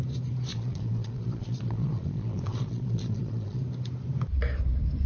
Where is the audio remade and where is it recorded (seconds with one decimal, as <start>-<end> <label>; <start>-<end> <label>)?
0.0-0.5 recorded; 0.5-3.6 remade; 3.6-5.1 recorded